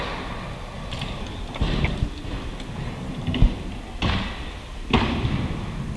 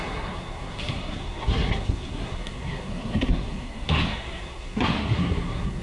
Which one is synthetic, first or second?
second